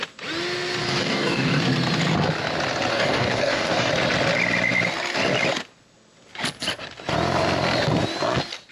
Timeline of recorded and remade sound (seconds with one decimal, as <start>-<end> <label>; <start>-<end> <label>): 0.0-0.8 recorded; 0.8-1.6 remade; 1.6-2.9 recorded; 2.9-3.9 remade; 3.9-8.7 recorded